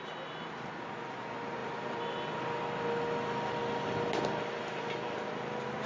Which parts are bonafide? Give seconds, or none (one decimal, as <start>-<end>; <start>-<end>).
0.0-5.9